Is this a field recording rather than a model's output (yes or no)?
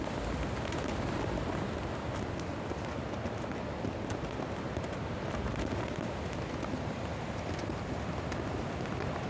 yes